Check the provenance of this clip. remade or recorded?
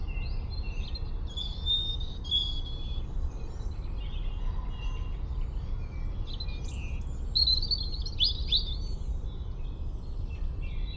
recorded